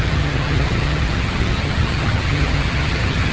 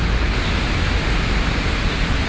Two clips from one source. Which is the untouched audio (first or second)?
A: second